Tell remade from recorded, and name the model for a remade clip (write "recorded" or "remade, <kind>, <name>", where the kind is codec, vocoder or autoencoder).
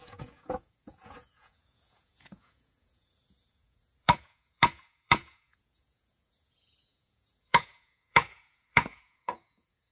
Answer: remade, vocoder, Vocos